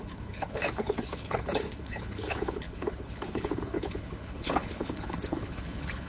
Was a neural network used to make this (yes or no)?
yes